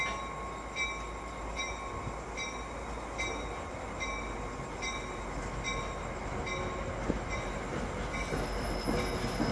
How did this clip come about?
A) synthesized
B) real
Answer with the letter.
B